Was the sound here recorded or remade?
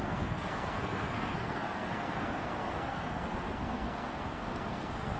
remade